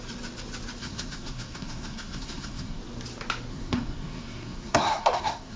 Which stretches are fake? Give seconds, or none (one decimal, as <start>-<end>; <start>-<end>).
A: 0.8-2.8; 3.5-5.6